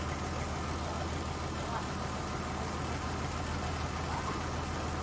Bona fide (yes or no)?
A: yes